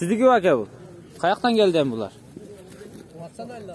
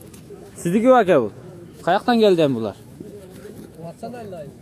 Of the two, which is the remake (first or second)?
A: second